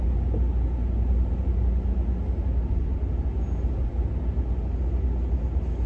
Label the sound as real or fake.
real